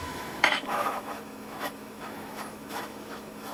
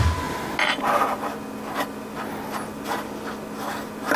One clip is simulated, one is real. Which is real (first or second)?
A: second